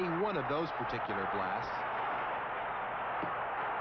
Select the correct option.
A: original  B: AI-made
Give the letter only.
A